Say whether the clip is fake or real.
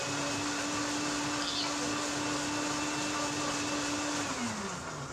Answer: real